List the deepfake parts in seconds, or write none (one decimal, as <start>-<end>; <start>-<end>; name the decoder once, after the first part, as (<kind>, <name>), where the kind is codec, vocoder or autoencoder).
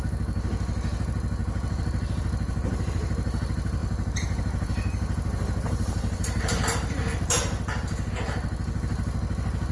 3.8-8.1 (vocoder, BigVGAN v2)